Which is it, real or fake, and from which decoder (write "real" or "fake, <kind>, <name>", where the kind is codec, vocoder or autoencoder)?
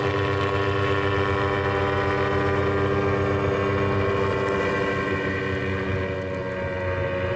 real